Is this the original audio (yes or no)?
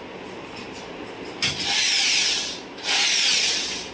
yes